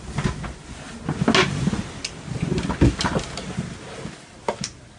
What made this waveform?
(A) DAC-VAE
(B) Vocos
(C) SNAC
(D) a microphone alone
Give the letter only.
D